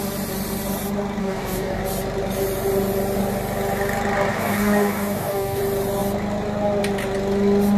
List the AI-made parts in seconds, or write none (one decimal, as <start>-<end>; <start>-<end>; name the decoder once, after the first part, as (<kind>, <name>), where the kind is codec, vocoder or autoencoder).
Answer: 1.2-1.8 (codec, DAC); 4.3-5.6

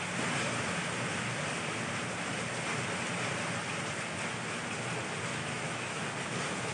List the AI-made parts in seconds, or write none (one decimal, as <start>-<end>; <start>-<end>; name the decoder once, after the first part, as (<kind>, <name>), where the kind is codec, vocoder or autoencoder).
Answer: 5.3-6.0 (autoencoder, DAC-VAE)

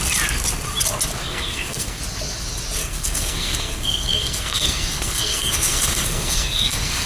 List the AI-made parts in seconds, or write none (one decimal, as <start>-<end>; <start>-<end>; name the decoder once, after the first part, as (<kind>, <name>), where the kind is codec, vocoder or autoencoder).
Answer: 1.2-2.0 (codec, SNAC); 2.8-7.1

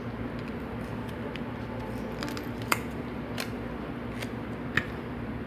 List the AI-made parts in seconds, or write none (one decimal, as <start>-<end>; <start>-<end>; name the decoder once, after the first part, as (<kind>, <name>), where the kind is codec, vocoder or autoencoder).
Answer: none

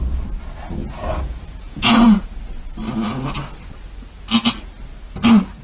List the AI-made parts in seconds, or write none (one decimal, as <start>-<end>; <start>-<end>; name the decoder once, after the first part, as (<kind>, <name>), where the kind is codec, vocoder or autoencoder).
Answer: 0.8-2.2 (vocoder, Vocos)

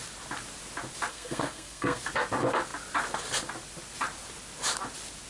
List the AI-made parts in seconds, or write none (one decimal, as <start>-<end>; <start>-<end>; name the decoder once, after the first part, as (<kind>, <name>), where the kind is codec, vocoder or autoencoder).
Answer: 1.1-2.0 (codec, SNAC)

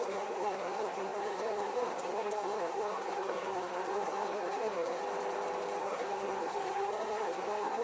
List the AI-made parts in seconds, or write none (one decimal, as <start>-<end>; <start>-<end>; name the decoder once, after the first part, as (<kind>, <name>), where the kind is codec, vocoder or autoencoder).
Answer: 0.0-5.0 (codec, SNAC); 5.8-7.8